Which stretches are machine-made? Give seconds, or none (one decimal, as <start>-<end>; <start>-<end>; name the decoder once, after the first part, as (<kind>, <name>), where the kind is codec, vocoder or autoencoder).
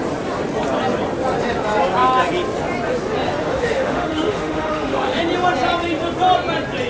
3.4-5.2 (autoencoder, DAC-VAE)